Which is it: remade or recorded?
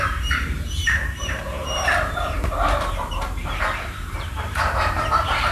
remade